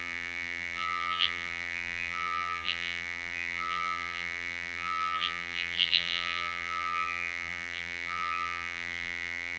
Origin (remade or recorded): remade